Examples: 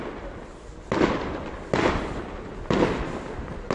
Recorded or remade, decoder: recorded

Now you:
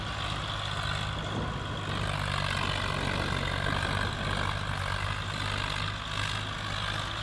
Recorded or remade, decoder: recorded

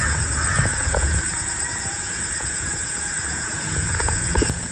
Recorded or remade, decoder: remade, vocoder, Vocos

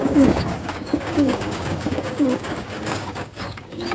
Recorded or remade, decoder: remade, codec, DAC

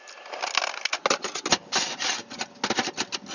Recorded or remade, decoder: recorded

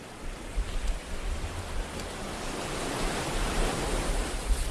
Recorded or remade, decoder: recorded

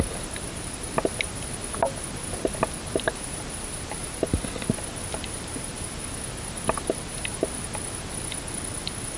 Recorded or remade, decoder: recorded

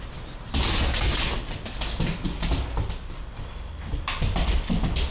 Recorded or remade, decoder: recorded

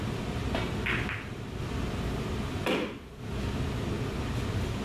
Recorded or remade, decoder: recorded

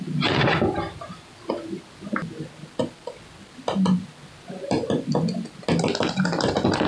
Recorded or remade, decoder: recorded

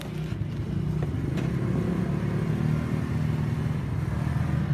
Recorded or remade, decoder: recorded